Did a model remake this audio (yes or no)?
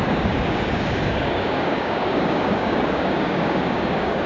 yes